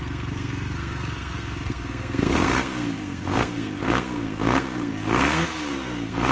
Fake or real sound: fake